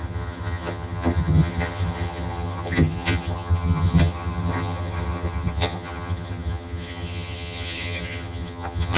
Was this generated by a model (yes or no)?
yes